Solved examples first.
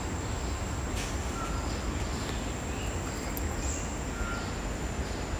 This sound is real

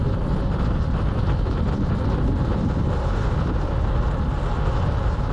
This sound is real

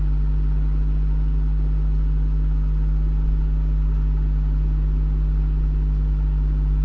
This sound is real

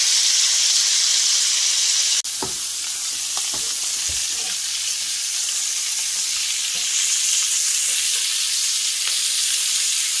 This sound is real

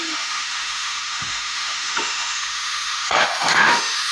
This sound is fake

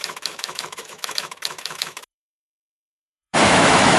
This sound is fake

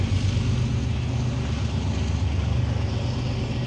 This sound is real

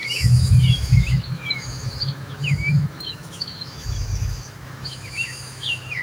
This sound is fake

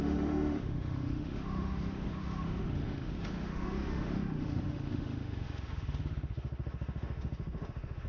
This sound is fake